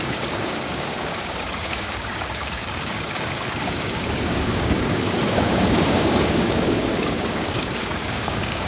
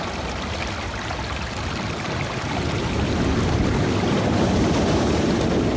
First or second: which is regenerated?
first